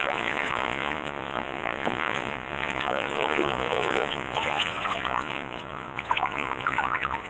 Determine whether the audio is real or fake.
fake